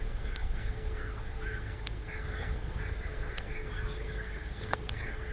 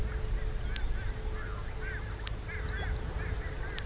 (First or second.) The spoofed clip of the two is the first